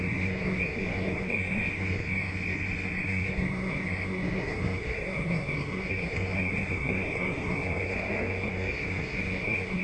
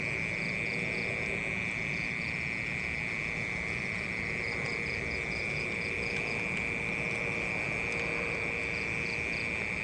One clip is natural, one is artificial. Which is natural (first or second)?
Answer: second